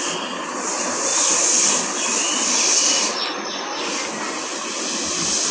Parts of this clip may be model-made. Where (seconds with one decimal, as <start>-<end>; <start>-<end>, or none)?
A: 1.1-3.8